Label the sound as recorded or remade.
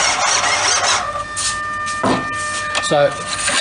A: recorded